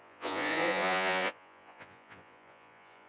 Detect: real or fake fake